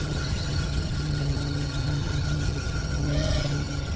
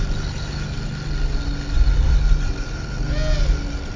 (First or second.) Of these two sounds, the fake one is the first